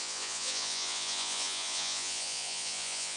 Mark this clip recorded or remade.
remade